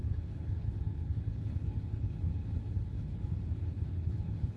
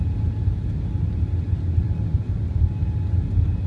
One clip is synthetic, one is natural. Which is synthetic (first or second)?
first